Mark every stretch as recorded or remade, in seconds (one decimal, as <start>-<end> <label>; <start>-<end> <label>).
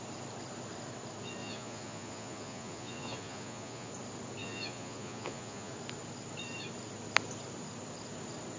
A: 0.0-1.4 recorded; 1.4-3.9 remade; 3.9-4.4 recorded; 4.4-5.7 remade; 5.7-8.6 recorded